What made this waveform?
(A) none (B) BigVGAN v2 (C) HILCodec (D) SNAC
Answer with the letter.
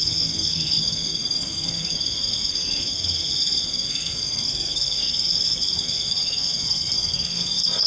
D